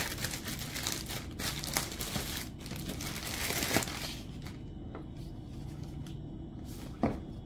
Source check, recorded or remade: recorded